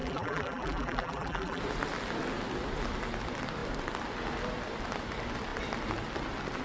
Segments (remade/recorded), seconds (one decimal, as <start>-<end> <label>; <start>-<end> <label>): 0.0-1.6 remade; 1.6-6.6 recorded